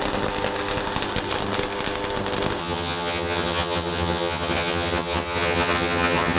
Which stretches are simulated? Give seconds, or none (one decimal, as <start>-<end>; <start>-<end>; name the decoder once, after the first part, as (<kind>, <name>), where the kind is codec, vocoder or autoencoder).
2.6-6.4 (vocoder, HiFi-GAN)